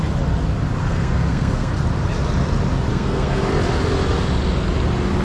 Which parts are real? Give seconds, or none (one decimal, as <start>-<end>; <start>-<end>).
0.0-0.8; 1.7-2.9; 3.5-5.2